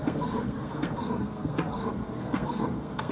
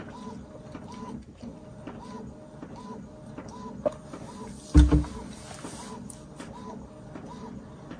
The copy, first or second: first